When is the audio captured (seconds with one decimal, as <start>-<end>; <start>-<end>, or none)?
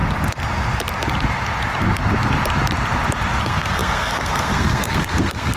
0.0-3.4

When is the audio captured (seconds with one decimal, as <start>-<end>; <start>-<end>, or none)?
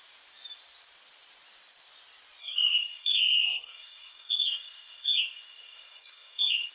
0.0-2.4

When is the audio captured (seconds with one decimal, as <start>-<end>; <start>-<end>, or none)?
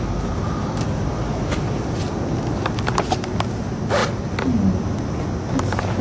0.0-6.0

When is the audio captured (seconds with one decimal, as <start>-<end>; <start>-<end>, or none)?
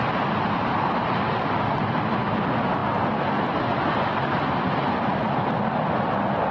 0.0-6.5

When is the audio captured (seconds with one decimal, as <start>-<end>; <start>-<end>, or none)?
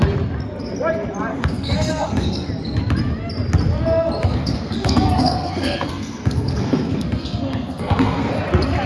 0.0-1.3; 2.5-4.2; 8.3-8.9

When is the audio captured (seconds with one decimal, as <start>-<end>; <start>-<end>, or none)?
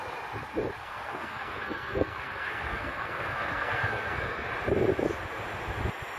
0.0-0.8; 4.5-6.2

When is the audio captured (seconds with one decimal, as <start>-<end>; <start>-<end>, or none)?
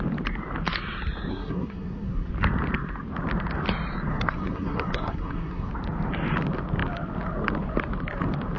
0.0-1.3; 2.3-4.1; 5.7-8.6